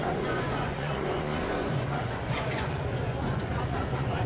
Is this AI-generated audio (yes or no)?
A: yes